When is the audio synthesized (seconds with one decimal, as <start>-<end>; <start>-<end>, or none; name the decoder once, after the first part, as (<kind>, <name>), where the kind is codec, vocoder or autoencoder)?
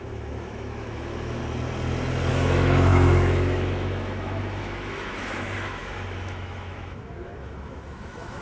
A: 0.0-1.4 (autoencoder, DAC-VAE); 2.3-8.4